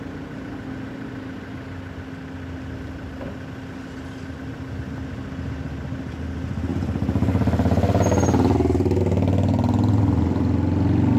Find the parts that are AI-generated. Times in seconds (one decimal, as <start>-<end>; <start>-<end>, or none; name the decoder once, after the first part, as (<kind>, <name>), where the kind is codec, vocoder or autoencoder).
none